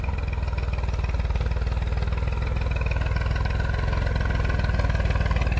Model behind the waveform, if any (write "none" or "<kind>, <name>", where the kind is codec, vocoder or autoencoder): none